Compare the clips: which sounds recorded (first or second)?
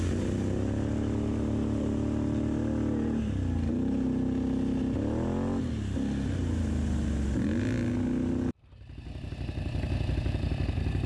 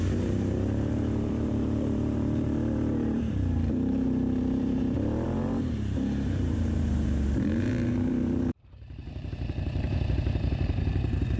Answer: first